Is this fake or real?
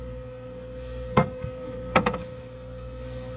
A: fake